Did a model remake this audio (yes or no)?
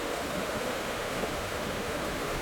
yes